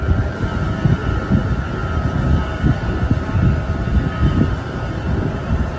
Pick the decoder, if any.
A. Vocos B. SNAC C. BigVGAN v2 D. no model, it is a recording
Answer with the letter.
D